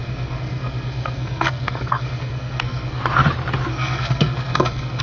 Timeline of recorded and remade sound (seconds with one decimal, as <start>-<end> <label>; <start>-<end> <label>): 0.0-3.0 remade; 3.0-3.7 recorded; 3.7-5.0 remade